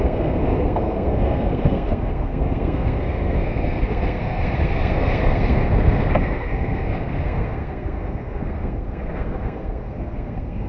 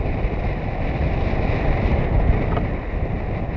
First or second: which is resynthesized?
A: first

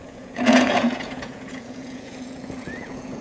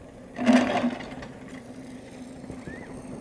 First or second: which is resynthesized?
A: first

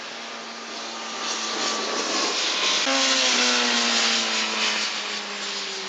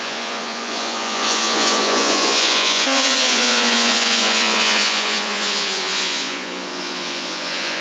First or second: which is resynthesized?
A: second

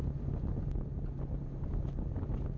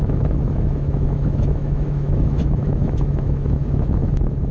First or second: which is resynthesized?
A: second